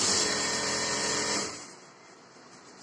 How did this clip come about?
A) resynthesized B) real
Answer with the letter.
A